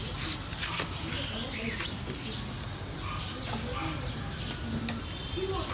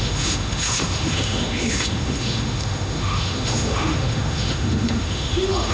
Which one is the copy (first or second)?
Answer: second